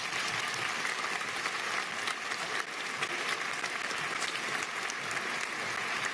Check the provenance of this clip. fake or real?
real